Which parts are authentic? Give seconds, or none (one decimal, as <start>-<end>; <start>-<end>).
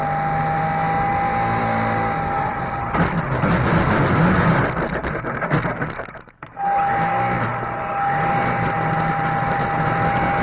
0.0-10.4